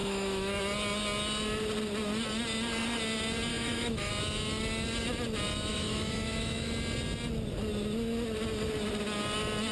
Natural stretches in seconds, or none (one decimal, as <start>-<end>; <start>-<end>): 0.6-3.5; 4.1-5.7; 6.7-9.7